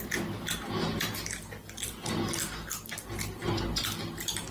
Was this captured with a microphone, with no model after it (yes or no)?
yes